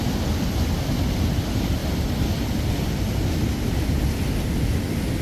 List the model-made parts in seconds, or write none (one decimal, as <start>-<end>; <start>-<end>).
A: none